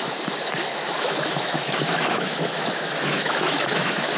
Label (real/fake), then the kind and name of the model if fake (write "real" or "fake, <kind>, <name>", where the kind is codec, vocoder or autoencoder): fake, autoencoder, DAC-VAE